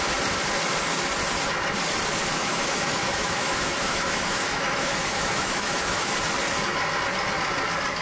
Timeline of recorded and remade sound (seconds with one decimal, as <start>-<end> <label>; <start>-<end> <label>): 0.0-2.4 recorded; 2.4-6.1 remade; 6.1-8.0 recorded